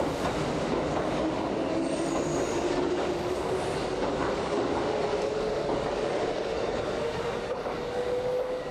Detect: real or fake fake